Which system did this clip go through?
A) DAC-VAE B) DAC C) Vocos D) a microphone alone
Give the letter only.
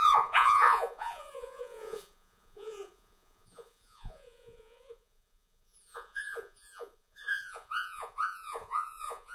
C